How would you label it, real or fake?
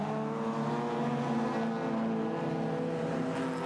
real